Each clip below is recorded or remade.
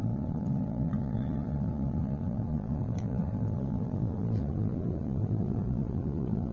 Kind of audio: remade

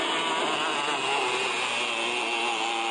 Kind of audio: recorded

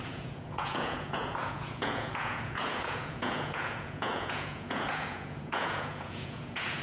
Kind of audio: remade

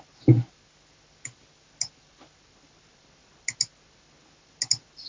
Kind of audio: recorded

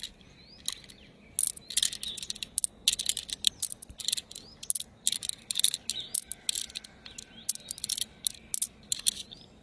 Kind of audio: recorded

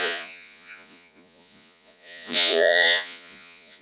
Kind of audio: remade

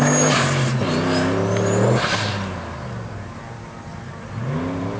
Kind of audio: recorded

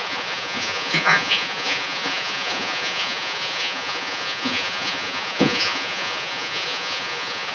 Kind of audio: remade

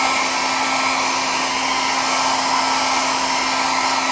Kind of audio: recorded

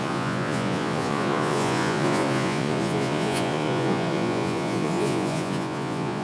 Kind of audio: remade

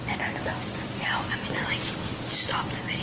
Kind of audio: recorded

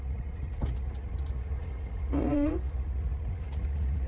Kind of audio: remade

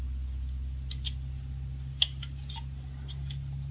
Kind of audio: recorded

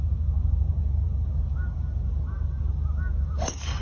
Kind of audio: recorded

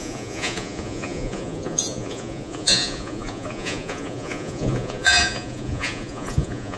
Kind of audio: remade